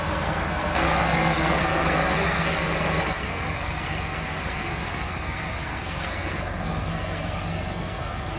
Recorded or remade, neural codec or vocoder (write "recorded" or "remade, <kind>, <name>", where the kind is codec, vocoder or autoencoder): remade, codec, SNAC